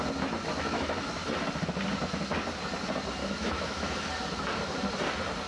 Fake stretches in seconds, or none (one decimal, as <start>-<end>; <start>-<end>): 0.5-1.1; 3.2-3.9